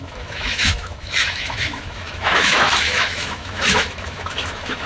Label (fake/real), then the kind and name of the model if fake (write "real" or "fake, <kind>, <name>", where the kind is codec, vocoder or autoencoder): fake, autoencoder, DAC-VAE